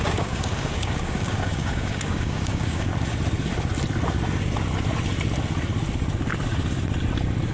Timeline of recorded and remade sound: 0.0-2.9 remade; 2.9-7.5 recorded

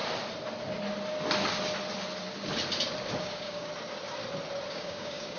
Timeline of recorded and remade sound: 0.0-3.2 recorded; 3.2-3.7 remade; 3.7-4.7 recorded; 4.7-5.4 remade